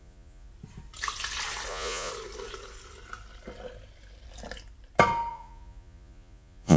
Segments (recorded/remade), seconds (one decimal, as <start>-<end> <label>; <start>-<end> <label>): 0.0-0.5 remade; 0.5-1.7 recorded; 1.7-2.1 remade; 2.1-5.3 recorded; 5.3-6.8 remade